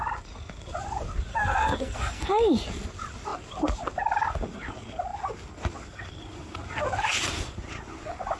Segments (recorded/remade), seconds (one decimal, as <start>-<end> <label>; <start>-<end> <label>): 0.0-1.3 recorded; 1.3-2.3 remade; 2.3-8.4 recorded